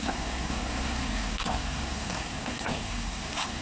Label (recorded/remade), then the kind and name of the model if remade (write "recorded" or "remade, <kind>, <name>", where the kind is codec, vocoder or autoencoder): remade, codec, SNAC